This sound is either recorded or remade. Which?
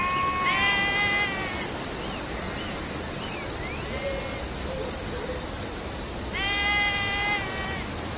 recorded